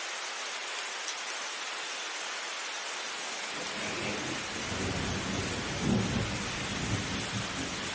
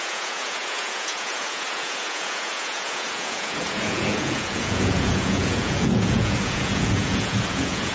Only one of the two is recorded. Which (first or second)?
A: first